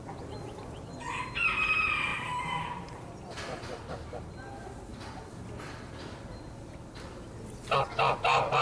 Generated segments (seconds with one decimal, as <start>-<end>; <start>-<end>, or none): 2.1-4.3

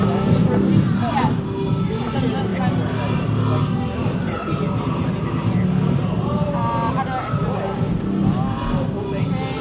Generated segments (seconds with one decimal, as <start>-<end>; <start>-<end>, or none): 5.8-6.6